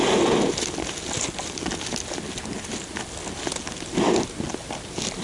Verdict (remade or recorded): recorded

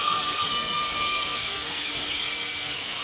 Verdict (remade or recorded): remade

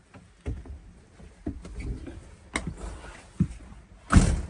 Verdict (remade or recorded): recorded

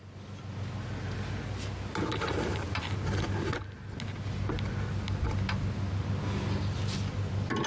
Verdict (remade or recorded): recorded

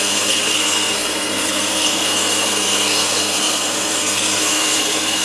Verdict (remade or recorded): remade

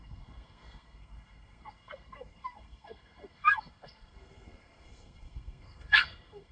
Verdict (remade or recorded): remade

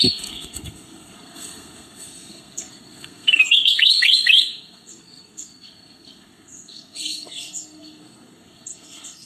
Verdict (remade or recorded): remade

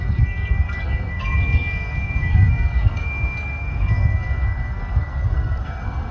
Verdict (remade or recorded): remade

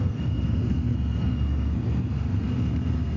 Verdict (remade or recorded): remade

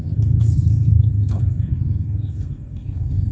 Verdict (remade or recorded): remade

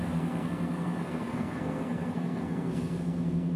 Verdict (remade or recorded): remade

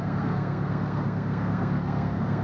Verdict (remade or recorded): remade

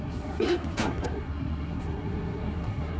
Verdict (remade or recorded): remade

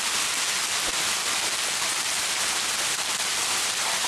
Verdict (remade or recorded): recorded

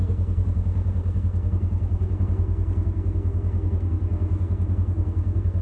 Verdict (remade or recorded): remade